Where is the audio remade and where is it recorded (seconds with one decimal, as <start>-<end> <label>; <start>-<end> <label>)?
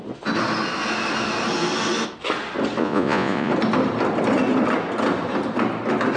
0.0-2.8 recorded; 2.8-3.5 remade; 3.5-6.2 recorded